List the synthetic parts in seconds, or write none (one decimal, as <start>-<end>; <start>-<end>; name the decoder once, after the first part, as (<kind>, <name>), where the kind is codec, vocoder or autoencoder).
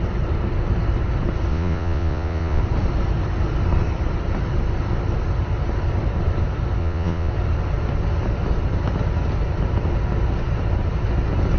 1.5-2.6 (vocoder, Vocos); 6.8-7.3